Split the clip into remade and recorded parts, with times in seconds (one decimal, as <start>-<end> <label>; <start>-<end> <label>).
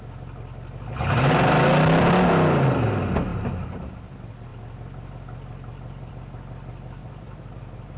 0.0-3.3 recorded; 3.3-4.0 remade; 4.0-7.0 recorded; 7.0-8.0 remade